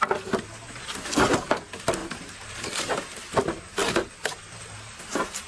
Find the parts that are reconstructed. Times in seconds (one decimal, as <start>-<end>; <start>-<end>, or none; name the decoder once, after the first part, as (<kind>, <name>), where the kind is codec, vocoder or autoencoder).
2.0-2.5 (vocoder, BigVGAN v2)